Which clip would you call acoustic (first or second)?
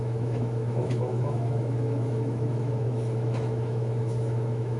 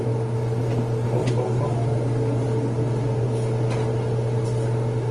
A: second